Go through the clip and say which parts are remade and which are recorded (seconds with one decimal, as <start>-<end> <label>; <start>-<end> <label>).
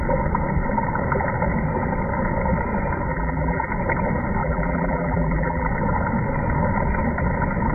0.0-3.1 recorded; 3.1-3.7 remade; 3.7-4.4 recorded; 4.4-5.7 remade; 5.7-7.7 recorded